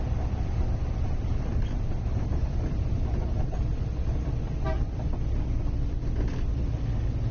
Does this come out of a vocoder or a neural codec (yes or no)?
yes